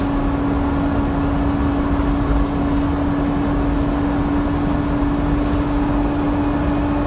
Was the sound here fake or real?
real